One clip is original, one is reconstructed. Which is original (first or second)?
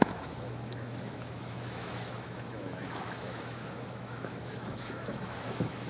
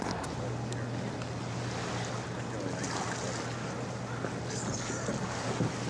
second